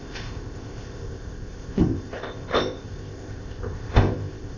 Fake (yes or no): yes